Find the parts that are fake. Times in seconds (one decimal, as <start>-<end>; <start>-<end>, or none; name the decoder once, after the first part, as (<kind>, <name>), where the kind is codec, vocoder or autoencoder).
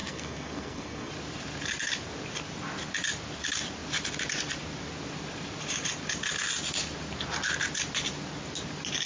0.0-1.1 (codec, SNAC)